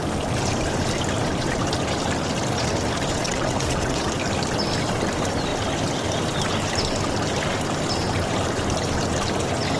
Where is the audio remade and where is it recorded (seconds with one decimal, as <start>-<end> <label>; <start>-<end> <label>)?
0.0-3.2 recorded; 3.2-4.0 remade; 4.0-9.8 recorded